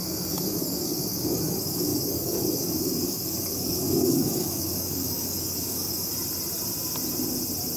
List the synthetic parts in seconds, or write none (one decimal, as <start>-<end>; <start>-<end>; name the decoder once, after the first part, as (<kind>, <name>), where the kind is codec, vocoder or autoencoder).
0.0-6.1 (codec, DAC)